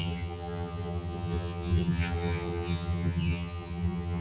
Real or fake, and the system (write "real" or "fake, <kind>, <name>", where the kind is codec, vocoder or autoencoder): fake, vocoder, HiFi-GAN